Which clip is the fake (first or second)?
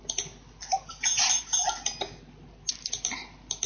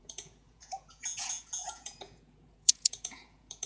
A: second